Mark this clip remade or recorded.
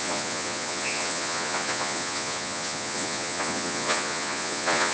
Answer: remade